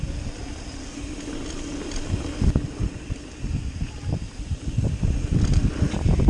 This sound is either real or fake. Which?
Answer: real